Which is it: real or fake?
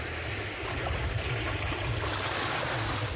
real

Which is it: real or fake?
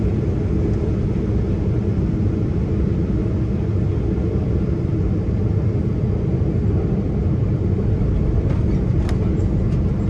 real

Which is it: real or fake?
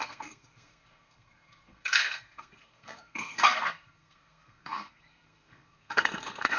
fake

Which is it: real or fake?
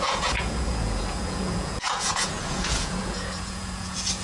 fake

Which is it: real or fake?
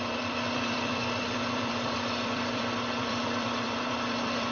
fake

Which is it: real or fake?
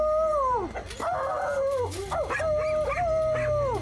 real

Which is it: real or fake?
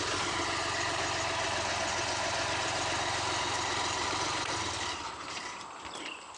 fake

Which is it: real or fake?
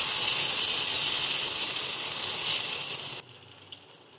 real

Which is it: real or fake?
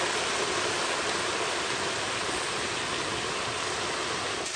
real